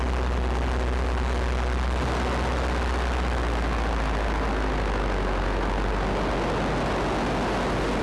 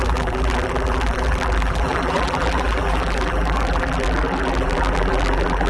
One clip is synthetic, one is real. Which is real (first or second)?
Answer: first